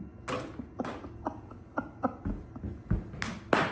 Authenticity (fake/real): real